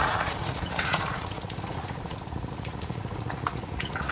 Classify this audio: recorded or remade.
remade